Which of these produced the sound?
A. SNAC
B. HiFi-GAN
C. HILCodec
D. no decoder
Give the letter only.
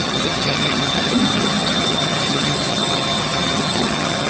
B